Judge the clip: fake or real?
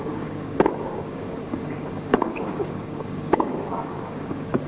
fake